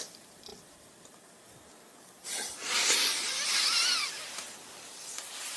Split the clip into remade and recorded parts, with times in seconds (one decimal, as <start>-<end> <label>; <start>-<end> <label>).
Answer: 0.0-5.6 recorded